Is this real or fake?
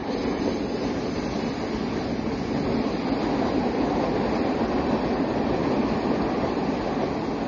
real